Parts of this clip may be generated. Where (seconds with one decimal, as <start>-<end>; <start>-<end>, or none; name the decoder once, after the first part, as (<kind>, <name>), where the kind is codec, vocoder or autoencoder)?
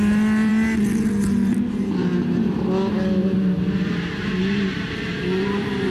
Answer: 2.1-2.6 (vocoder, BigVGAN v2); 3.2-5.9